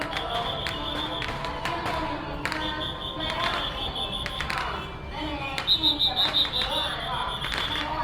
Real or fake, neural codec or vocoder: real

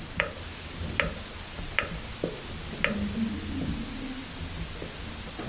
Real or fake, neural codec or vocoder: real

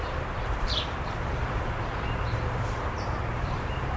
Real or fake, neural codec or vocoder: fake, vocoder, BigVGAN v2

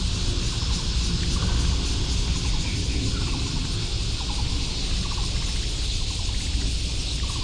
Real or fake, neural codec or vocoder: real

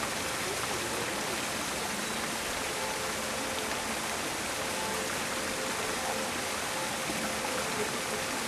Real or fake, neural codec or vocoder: real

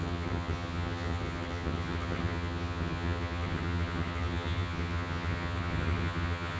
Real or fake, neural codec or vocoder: fake, vocoder, HiFi-GAN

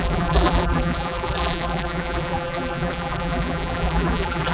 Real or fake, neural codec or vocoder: fake, vocoder, BigVGAN v2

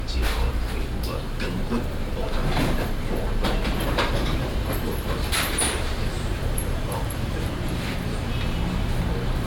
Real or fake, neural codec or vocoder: fake, vocoder, BigVGAN v2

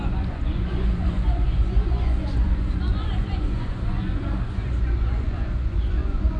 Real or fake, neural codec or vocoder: fake, vocoder, Vocos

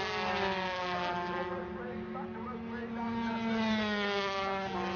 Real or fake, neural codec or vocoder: real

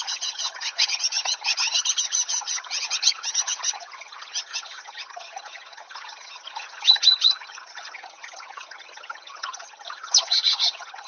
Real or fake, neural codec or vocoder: fake, vocoder, HiFi-GAN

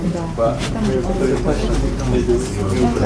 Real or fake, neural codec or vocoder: real